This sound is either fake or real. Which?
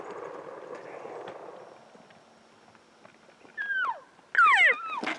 real